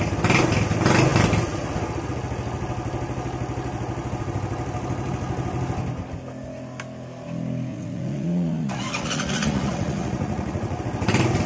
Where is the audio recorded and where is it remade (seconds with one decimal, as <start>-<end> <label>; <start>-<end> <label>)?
0.0-7.7 recorded; 7.7-10.8 remade; 10.8-11.5 recorded